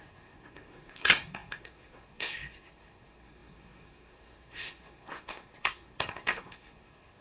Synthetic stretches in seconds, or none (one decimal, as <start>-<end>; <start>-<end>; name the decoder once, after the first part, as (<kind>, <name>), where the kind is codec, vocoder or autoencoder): 0.0-7.2 (codec, SNAC)